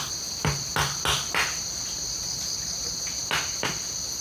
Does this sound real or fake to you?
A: real